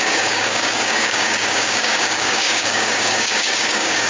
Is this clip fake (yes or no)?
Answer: yes